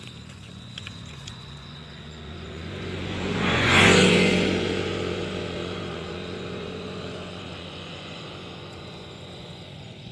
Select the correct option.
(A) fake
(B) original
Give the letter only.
A